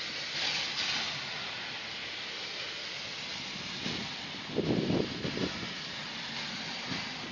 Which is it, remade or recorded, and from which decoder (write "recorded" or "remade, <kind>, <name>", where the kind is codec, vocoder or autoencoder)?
recorded